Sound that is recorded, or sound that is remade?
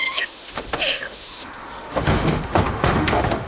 remade